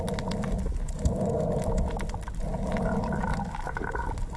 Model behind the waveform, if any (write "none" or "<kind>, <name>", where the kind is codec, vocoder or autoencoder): none